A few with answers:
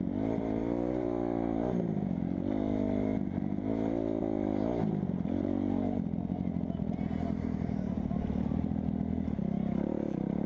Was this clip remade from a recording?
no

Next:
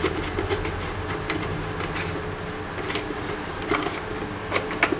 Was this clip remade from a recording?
no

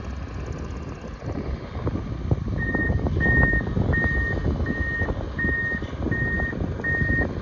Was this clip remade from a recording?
no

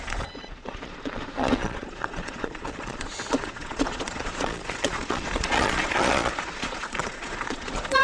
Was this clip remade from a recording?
yes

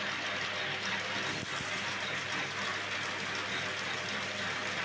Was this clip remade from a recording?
no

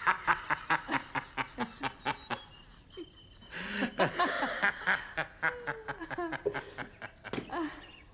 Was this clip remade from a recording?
no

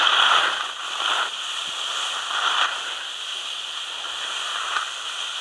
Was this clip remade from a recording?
yes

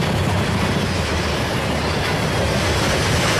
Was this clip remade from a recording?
no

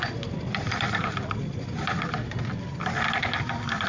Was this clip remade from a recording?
no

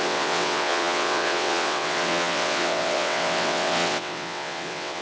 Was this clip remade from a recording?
yes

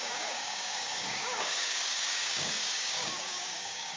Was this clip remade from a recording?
yes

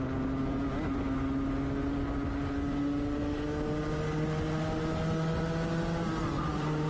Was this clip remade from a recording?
no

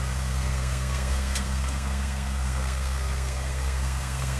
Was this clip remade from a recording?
yes